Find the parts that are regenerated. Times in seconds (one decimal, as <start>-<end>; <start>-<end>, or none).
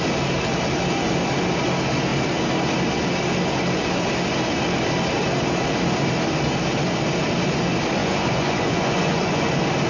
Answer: 8.0-9.5